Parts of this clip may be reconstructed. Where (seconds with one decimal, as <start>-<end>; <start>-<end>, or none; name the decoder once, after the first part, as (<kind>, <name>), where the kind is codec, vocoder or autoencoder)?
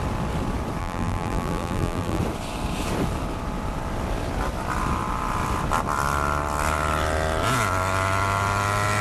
0.8-2.2 (vocoder, BigVGAN v2)